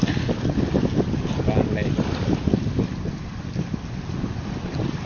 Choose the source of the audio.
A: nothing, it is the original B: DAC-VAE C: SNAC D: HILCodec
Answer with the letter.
A